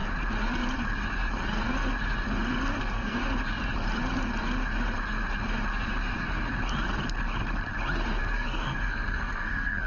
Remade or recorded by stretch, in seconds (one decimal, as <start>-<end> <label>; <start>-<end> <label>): 0.0-2.8 recorded; 2.8-3.2 remade; 3.2-8.2 recorded; 8.2-9.9 remade